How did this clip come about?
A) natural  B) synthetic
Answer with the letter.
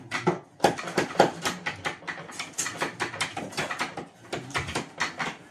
A